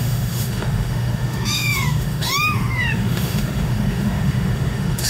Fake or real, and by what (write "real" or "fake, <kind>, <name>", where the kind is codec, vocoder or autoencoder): fake, autoencoder, DAC-VAE